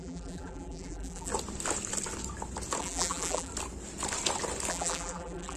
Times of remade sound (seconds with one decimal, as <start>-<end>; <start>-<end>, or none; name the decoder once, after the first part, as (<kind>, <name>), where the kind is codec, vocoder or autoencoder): 0.0-1.3 (vocoder, BigVGAN v2); 2.8-3.5; 4.7-5.6